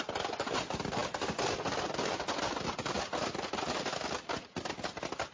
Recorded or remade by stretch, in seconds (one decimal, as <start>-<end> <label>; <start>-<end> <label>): 0.0-5.3 recorded